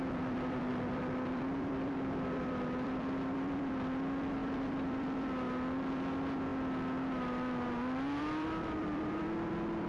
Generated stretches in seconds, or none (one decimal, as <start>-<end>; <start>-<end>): 0.0-6.5; 8.2-9.9